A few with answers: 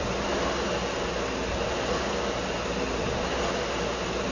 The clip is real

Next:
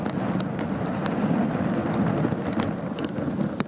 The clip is real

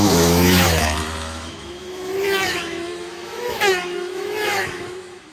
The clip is fake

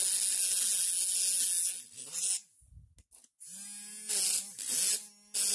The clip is real